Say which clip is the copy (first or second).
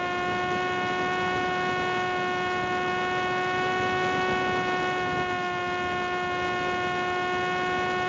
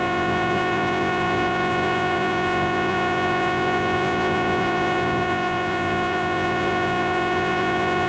second